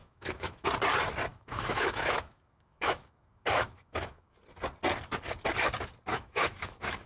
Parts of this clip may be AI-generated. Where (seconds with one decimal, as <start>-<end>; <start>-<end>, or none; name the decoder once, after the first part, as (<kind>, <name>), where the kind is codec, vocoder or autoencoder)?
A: 0.0-0.7 (autoencoder, DAC-VAE); 1.3-4.4; 6.1-7.1

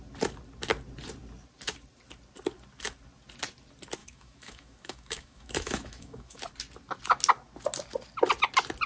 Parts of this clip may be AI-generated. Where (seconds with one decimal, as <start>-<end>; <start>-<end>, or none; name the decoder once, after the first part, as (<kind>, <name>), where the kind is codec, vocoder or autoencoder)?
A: 4.0-6.4 (autoencoder, DAC-VAE)

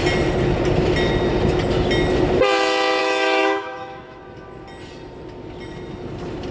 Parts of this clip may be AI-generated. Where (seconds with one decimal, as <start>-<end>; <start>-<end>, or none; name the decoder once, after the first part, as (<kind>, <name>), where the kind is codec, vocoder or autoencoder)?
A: 3.0-4.2 (autoencoder, DAC-VAE)

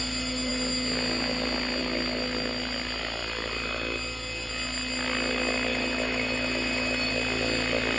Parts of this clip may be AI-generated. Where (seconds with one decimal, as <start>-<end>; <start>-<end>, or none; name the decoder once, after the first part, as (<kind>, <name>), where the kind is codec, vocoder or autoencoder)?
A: 5.7-7.1 (autoencoder, DAC-VAE)